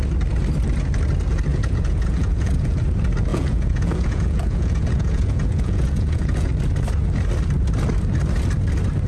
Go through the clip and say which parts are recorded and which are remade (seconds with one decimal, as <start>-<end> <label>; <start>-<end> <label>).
0.0-1.5 recorded; 1.5-2.8 remade; 2.8-3.3 recorded; 3.3-6.5 remade; 6.5-9.1 recorded